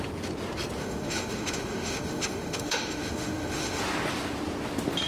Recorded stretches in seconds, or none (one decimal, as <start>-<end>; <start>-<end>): 0.0-0.8; 3.8-5.1